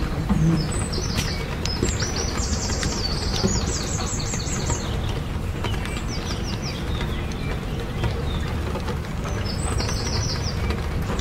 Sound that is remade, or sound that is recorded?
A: recorded